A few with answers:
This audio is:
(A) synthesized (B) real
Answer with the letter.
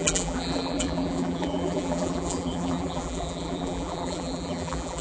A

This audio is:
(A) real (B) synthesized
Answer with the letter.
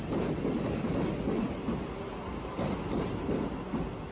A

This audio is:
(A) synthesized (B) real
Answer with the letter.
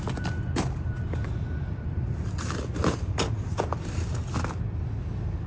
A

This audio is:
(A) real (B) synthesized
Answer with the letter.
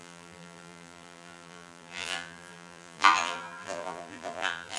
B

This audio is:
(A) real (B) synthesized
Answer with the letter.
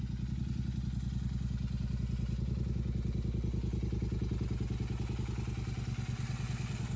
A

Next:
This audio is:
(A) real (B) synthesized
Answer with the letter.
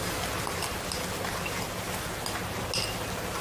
A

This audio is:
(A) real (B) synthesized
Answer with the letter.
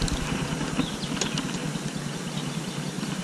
A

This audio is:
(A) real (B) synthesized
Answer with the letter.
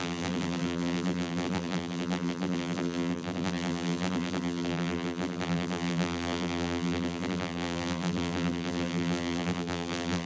B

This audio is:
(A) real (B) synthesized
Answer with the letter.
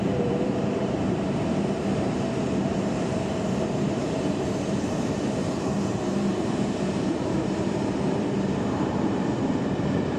B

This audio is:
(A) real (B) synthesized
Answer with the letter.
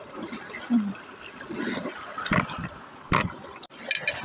A